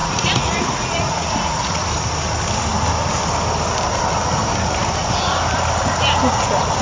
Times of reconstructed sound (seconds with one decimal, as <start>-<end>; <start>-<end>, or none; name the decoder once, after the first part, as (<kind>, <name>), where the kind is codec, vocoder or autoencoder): 0.0-1.9 (vocoder, Vocos)